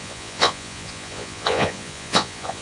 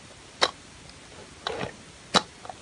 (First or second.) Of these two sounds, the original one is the second